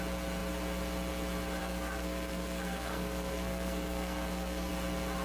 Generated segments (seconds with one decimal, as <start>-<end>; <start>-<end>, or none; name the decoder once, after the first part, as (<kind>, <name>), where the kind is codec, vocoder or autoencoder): 1.6-4.7 (codec, SNAC)